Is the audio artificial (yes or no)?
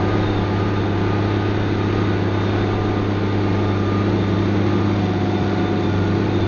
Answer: no